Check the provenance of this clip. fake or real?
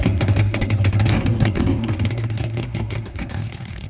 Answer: fake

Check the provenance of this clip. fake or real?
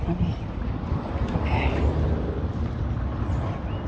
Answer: real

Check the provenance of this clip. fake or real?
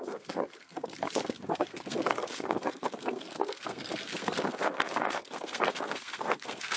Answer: fake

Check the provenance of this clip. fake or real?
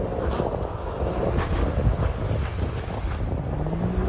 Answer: real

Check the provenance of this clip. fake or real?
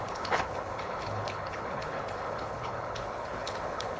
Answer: fake